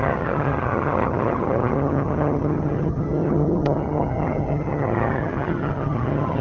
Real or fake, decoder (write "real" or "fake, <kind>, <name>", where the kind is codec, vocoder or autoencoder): fake, vocoder, HiFi-GAN